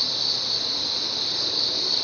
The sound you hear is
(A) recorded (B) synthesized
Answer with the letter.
A